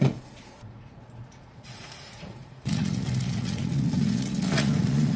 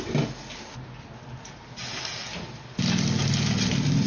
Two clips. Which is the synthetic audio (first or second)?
first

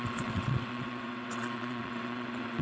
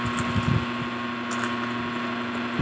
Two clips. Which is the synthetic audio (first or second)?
first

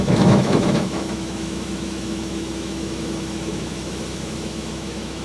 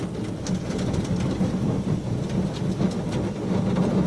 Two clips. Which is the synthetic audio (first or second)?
first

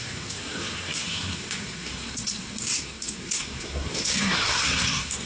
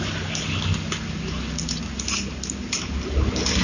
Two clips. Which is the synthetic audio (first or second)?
first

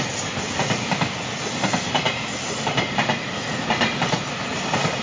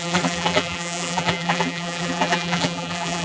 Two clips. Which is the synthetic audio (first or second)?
second